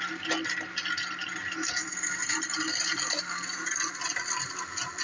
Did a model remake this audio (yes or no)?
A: no